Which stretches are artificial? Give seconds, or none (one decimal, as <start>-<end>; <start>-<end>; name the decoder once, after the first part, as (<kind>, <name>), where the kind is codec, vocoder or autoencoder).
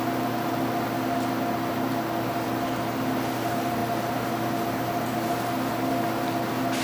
none